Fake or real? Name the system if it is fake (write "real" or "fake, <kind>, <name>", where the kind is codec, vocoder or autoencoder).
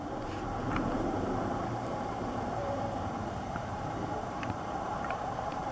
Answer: fake, vocoder, BigVGAN v2